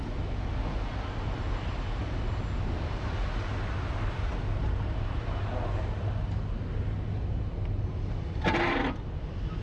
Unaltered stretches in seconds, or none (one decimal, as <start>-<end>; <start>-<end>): 0.0-4.6; 5.5-9.6